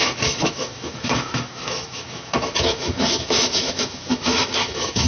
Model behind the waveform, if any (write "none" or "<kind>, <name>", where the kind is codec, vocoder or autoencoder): autoencoder, DAC-VAE